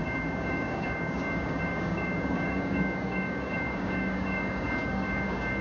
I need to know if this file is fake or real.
fake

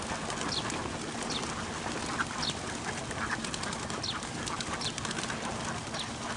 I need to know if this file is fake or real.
real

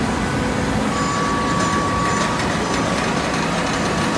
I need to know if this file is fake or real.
real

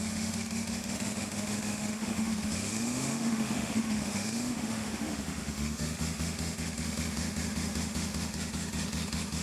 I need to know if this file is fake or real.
fake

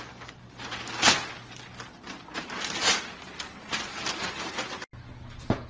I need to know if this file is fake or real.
real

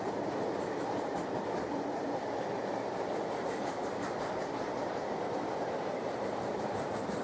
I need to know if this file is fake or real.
fake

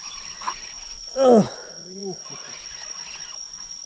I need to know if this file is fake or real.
fake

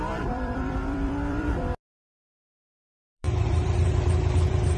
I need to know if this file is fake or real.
fake